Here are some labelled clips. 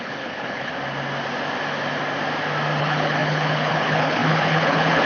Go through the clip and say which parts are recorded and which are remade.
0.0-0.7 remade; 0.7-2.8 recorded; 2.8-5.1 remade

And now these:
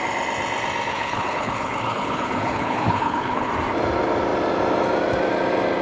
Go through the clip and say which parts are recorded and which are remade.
0.0-0.9 recorded; 0.9-3.5 remade; 3.5-5.8 recorded

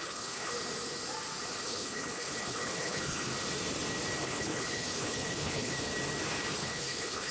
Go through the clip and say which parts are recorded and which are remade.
0.0-0.5 remade; 0.5-1.6 recorded; 1.6-3.3 remade; 3.3-4.2 recorded; 4.2-5.9 remade; 5.9-6.5 recorded; 6.5-7.3 remade

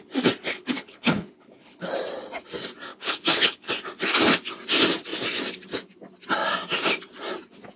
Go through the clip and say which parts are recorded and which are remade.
0.0-0.5 recorded; 0.5-1.9 remade; 1.9-2.9 recorded; 2.9-3.7 remade; 3.7-7.8 recorded

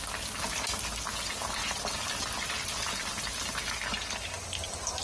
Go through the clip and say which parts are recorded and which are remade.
0.0-5.0 recorded

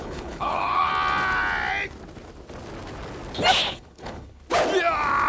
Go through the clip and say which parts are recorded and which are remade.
0.0-0.9 remade; 0.9-3.7 recorded; 3.7-4.4 remade; 4.4-5.3 recorded

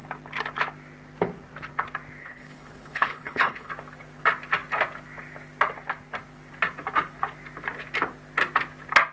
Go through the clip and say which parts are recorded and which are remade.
0.0-2.2 recorded; 2.2-3.7 remade; 3.7-9.1 recorded